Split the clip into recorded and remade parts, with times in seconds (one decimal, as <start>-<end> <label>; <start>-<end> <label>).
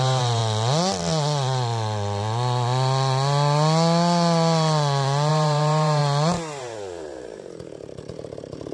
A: 0.0-0.4 remade; 0.4-5.3 recorded; 5.3-6.0 remade; 6.0-6.6 recorded; 6.6-8.7 remade